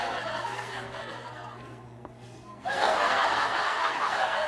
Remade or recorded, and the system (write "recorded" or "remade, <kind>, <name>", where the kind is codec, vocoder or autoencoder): remade, codec, SNAC